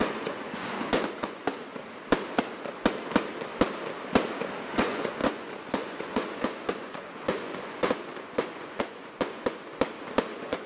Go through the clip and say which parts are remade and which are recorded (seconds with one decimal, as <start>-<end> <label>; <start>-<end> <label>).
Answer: 0.0-1.7 remade; 1.7-4.7 recorded; 4.7-9.7 remade; 9.7-10.2 recorded; 10.2-10.7 remade